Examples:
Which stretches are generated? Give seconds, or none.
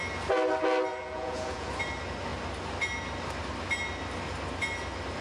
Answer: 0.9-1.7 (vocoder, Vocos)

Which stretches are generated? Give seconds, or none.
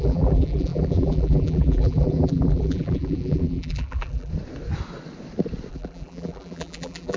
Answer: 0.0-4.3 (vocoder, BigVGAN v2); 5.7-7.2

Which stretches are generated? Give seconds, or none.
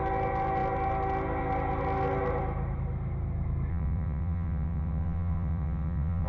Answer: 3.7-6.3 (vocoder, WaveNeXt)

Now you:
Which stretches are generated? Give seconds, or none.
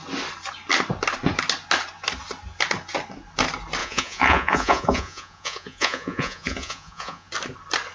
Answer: 3.8-7.3 (vocoder, Vocos)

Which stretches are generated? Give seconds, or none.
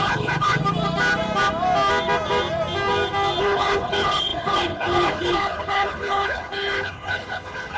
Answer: 0.0-0.6 (codec, HILCodec); 3.4-7.8